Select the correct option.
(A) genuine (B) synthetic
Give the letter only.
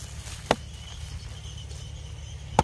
A